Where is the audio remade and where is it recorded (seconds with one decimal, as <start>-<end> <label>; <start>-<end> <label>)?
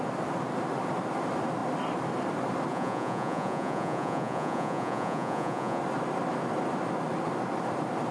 0.0-2.7 recorded; 2.7-5.8 remade; 5.8-8.1 recorded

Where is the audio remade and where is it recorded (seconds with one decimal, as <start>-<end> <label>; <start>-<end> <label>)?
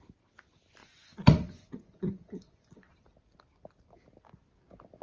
0.0-0.8 recorded; 0.8-2.9 remade; 2.9-5.0 recorded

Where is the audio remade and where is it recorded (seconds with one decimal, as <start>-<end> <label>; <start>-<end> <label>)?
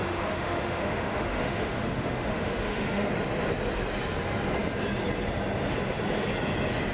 0.0-3.1 remade; 3.1-6.9 recorded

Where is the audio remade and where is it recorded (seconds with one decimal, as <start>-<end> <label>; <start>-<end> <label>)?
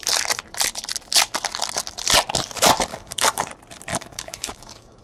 0.0-2.9 recorded; 2.9-3.5 remade; 3.5-3.9 recorded; 3.9-5.0 remade